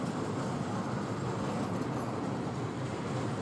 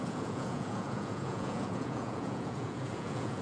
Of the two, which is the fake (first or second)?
second